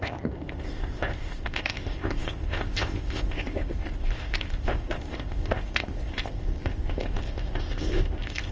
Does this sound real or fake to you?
fake